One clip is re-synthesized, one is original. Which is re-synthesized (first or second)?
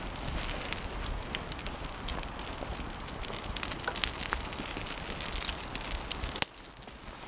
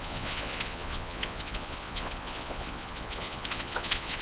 second